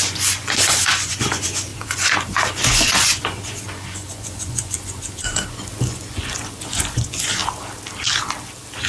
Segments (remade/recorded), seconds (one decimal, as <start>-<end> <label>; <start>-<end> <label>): 0.0-7.4 remade; 7.4-8.9 recorded